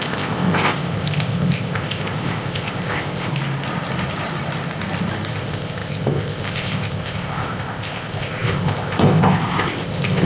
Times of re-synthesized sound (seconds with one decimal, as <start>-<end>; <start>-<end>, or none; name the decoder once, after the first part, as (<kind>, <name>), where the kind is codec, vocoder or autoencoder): 0.0-3.3 (codec, ZipCodec); 5.3-10.2